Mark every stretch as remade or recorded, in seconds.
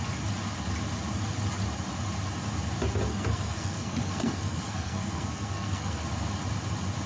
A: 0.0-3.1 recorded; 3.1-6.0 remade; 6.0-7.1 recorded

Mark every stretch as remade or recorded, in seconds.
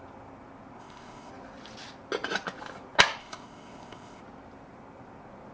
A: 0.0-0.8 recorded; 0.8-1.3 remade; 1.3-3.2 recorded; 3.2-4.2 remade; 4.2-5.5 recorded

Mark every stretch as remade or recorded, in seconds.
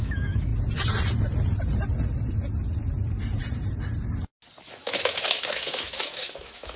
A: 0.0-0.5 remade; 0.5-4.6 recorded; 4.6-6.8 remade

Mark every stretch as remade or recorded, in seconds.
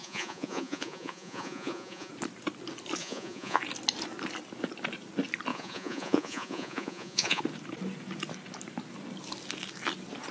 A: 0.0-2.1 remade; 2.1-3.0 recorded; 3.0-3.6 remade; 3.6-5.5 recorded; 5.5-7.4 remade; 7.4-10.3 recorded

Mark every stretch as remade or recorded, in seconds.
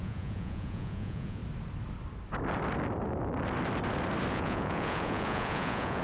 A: 0.0-1.4 remade; 1.4-4.3 recorded; 4.3-6.0 remade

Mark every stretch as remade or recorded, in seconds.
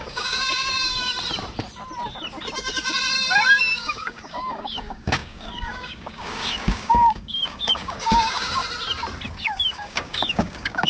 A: 0.0-1.1 remade; 1.1-3.6 recorded; 3.6-8.6 remade; 8.6-9.3 recorded; 9.3-10.9 remade